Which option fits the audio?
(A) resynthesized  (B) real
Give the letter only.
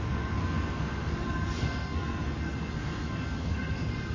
A